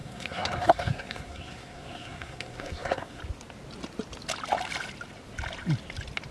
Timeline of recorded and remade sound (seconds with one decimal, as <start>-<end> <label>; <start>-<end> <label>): 0.0-3.2 remade; 3.2-6.3 recorded